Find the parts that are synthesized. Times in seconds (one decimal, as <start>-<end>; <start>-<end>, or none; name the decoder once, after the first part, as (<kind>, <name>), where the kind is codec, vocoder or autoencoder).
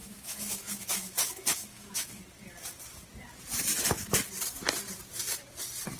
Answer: 0.0-2.2 (autoencoder, DAC-VAE)